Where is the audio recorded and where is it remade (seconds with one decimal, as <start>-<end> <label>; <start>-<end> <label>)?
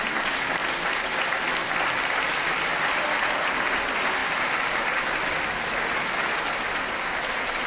0.0-2.7 recorded; 2.7-3.8 remade; 3.8-4.2 recorded; 4.2-7.7 remade